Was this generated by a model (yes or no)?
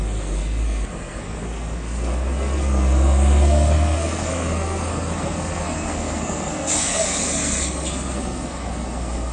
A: yes